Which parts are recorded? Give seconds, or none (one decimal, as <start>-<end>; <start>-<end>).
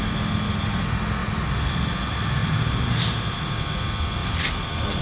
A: 0.0-1.2; 1.8-2.4; 3.4-4.2